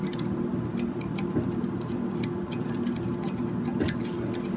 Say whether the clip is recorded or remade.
recorded